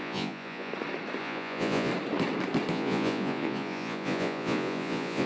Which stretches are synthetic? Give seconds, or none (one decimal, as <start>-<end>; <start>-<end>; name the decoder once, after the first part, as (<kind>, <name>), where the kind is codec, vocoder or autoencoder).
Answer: 0.0-0.7 (vocoder, Vocos); 1.2-1.9; 2.7-5.3